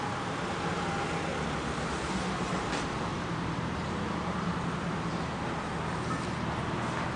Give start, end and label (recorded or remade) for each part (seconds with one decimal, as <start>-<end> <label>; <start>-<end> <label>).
0.0-3.1 recorded; 3.1-5.5 remade; 5.5-7.2 recorded